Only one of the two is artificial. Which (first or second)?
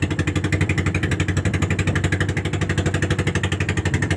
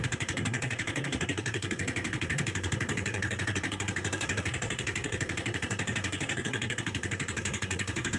second